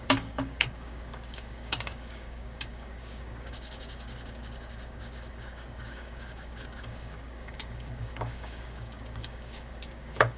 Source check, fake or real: fake